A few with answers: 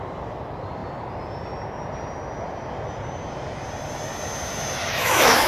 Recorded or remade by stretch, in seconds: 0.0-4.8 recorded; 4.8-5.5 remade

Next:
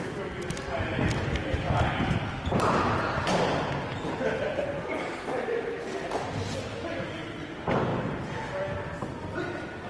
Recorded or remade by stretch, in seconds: 0.0-9.9 recorded

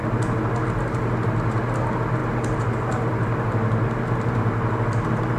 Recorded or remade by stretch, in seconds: 0.0-5.4 recorded